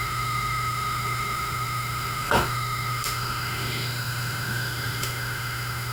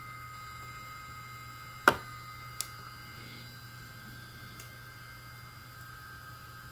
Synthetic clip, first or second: first